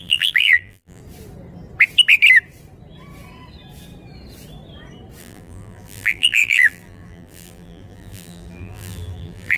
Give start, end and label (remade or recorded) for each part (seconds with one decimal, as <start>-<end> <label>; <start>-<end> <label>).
0.0-1.0 remade; 1.0-5.2 recorded; 5.2-9.6 remade